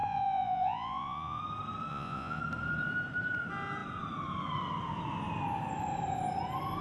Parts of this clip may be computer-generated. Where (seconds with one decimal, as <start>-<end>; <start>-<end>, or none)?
0.0-1.4; 1.9-2.4